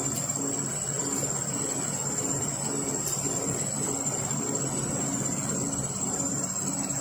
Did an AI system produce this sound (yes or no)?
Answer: no